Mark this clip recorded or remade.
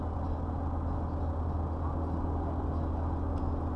recorded